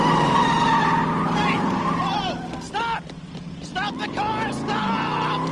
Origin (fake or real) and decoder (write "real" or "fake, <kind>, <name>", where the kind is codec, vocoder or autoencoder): real